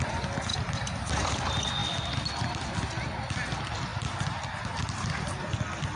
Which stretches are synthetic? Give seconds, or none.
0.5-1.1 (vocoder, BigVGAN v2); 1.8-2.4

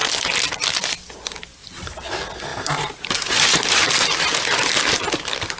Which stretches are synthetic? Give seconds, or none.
2.5-4.7 (vocoder, BigVGAN v2)

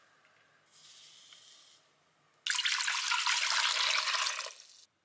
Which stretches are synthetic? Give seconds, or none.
none

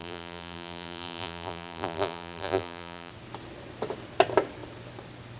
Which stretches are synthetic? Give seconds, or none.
0.0-3.1 (vocoder, BigVGAN v2)

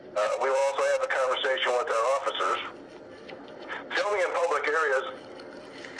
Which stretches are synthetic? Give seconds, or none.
0.0-0.6 (vocoder, BigVGAN v2); 3.2-4.7; 5.6-6.0

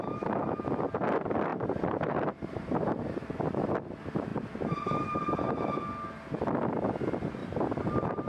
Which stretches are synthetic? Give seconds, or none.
1.5-3.6 (vocoder, BigVGAN v2); 4.3-5.7; 7.4-8.3

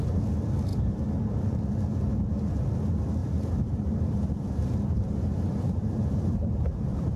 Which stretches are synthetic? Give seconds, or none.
3.2-7.2 (vocoder, BigVGAN v2)